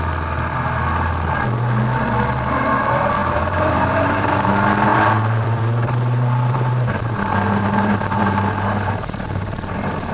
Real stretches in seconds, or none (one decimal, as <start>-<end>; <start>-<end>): 0.0-3.2; 4.5-4.9